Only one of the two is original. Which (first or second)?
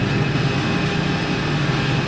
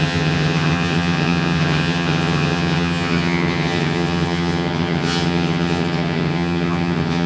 first